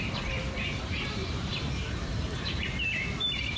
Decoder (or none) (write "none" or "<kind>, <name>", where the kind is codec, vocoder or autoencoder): vocoder, BigVGAN v2